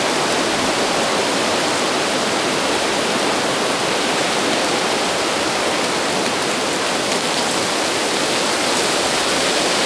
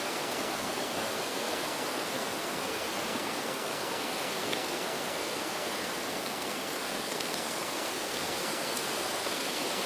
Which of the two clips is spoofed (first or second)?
second